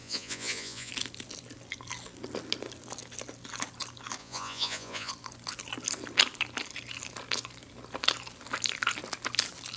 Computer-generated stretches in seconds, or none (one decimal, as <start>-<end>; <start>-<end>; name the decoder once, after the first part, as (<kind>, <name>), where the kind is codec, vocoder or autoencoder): 0.0-0.9 (vocoder, Vocos); 4.2-5.1